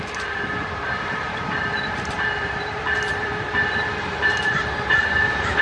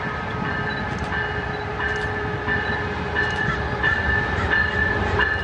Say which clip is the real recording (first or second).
second